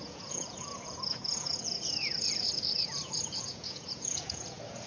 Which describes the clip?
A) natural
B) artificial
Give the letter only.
B